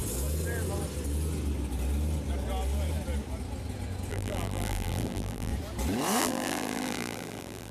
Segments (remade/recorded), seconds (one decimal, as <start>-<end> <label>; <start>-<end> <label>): 0.0-4.1 recorded; 4.1-5.5 remade; 5.5-6.2 recorded; 6.2-7.7 remade